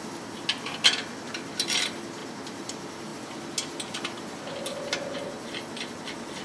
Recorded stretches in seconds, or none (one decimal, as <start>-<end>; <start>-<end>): 0.0-6.4